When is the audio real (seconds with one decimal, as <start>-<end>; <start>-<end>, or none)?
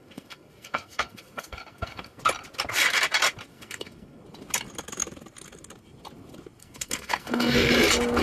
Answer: 2.2-3.5; 4.2-6.6; 7.7-8.2